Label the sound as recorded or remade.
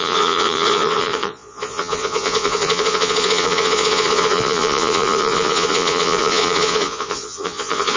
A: remade